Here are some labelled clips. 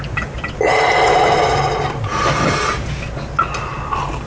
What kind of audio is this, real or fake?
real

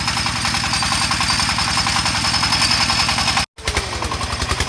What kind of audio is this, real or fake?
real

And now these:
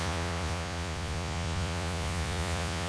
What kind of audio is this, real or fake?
fake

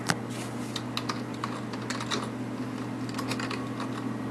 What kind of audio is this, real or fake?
real